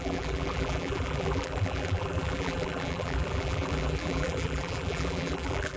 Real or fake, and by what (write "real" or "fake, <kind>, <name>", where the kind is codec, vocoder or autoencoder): fake, vocoder, BigVGAN v2